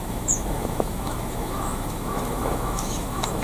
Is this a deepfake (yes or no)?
yes